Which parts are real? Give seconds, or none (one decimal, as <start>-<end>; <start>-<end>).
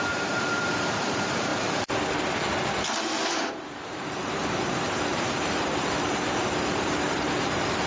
1.5-3.5; 4.4-5.1